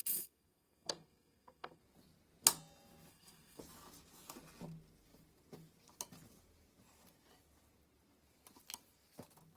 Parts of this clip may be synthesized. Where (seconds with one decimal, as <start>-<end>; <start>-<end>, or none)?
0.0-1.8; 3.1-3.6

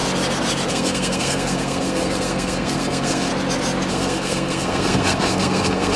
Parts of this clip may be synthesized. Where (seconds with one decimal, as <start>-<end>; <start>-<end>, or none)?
0.7-3.3; 3.9-6.0

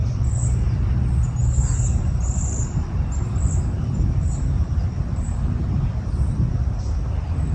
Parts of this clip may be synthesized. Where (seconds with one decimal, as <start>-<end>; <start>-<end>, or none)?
1.4-5.9